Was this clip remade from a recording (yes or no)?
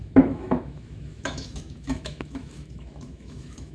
yes